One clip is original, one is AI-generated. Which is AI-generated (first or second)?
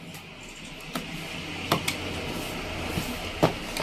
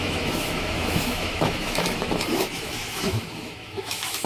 second